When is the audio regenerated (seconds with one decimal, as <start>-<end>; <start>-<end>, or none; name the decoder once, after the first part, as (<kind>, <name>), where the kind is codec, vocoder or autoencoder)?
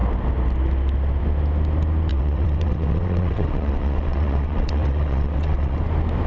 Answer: 2.1-5.8 (vocoder, WaveNeXt)